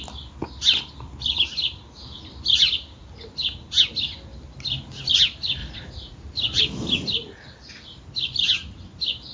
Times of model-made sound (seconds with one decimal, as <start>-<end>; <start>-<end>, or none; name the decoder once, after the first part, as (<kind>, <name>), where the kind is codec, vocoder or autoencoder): 5.6-6.6 (vocoder, Vocos)